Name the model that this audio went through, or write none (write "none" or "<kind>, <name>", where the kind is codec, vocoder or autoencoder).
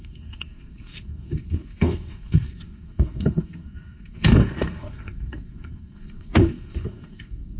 codec, SNAC